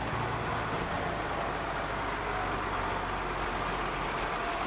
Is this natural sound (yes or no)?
yes